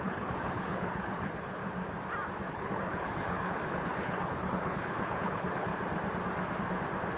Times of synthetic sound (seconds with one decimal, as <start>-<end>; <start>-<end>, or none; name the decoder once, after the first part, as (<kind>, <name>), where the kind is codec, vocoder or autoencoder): 0.0-1.6 (codec, HILCodec); 2.5-5.7